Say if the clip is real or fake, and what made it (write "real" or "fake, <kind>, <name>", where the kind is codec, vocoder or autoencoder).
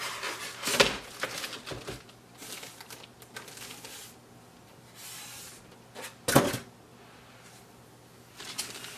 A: real